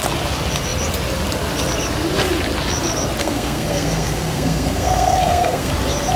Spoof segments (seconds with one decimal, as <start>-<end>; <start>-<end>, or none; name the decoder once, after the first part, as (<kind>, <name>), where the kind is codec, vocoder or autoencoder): 3.2-5.7 (codec, SNAC)